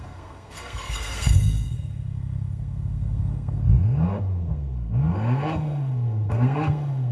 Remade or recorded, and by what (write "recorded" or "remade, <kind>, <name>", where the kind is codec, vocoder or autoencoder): remade, codec, SNAC